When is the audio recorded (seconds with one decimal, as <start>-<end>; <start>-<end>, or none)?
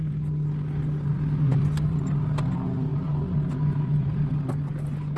0.0-5.2